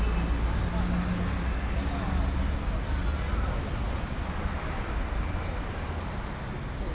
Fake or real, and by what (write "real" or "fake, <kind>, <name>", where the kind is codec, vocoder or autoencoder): real